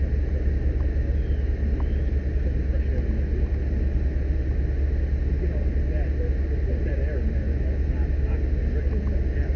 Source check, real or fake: real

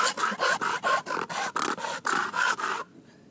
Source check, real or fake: real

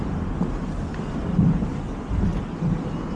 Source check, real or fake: real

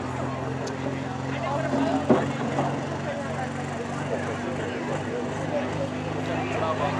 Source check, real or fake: real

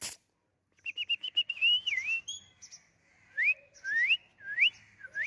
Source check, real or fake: real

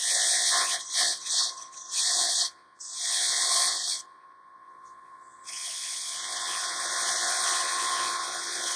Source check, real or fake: fake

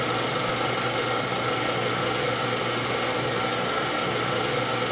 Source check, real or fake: real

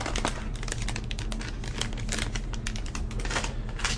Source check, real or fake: real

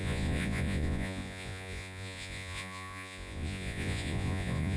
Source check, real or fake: fake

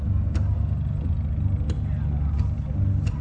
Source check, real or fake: real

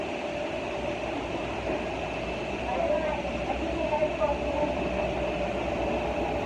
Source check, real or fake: real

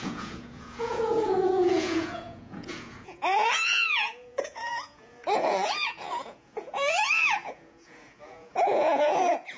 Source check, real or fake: fake